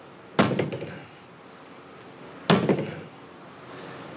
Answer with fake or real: real